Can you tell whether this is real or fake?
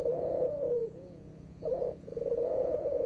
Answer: fake